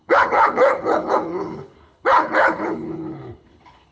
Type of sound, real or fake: fake